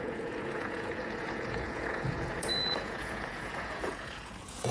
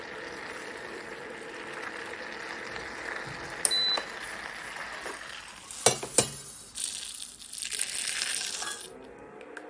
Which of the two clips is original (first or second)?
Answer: second